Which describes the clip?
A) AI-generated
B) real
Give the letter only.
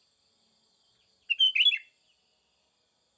B